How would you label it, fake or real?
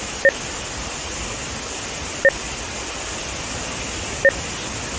real